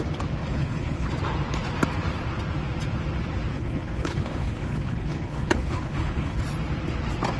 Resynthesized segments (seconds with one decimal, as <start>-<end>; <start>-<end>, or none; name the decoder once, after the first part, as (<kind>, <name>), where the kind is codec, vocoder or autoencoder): 0.4-1.1 (codec, HILCodec); 3.5-6.4